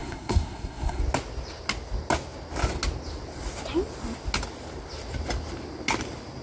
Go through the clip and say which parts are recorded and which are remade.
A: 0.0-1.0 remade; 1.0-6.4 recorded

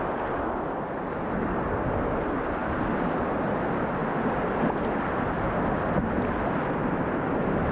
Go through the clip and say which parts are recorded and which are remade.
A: 0.0-7.7 recorded